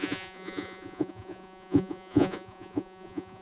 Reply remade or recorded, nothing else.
remade